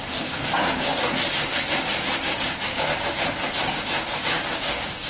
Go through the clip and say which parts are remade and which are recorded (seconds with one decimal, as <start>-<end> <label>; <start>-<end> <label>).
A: 0.0-0.9 remade; 0.9-1.6 recorded; 1.6-2.9 remade; 2.9-3.7 recorded; 3.7-5.1 remade